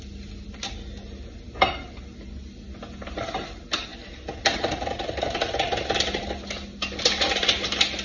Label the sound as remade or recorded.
recorded